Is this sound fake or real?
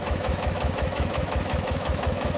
fake